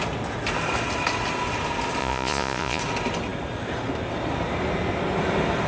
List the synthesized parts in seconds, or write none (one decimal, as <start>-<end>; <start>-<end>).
2.0-2.8